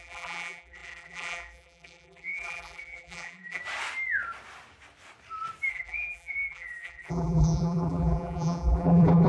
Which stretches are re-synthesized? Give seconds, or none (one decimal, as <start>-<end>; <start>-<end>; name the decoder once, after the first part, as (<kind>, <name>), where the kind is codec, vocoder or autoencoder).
0.0-3.6 (vocoder, BigVGAN v2); 5.7-9.3